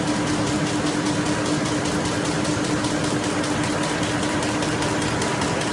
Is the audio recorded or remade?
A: recorded